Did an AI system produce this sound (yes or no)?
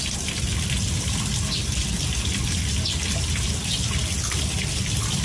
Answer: no